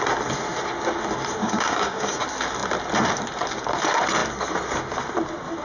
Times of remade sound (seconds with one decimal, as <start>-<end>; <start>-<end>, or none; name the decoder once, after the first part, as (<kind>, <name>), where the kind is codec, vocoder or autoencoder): 1.4-2.2 (codec, DAC)